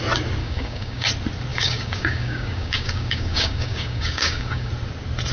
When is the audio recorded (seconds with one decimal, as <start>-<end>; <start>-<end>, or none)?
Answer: 0.0-0.4; 1.1-1.5; 4.7-5.3